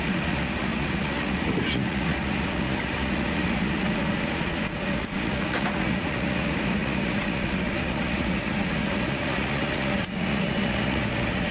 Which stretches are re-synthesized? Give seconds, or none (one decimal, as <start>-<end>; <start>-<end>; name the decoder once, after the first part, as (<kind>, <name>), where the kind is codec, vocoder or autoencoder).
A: 0.0-11.5 (vocoder, Vocos)